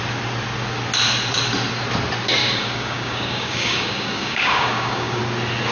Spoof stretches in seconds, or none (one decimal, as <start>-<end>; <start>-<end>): 2.4-5.2